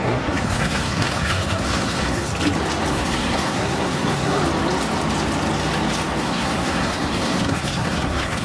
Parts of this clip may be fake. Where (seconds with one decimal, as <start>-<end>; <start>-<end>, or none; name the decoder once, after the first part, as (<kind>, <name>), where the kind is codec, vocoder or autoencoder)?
0.0-2.3 (codec, SNAC); 2.9-4.4; 6.2-8.4